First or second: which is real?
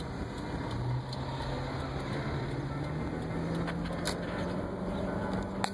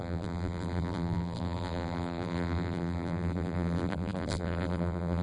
first